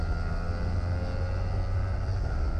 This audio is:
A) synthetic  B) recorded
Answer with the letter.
B